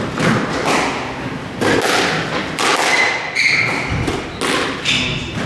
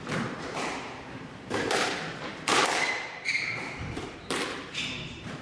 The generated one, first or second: second